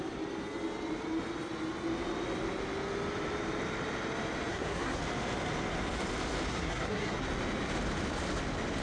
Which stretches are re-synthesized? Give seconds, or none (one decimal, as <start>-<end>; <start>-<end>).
4.5-5.0; 6.5-7.2